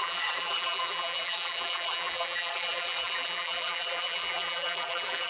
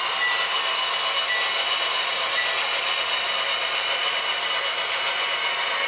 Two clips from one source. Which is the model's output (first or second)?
first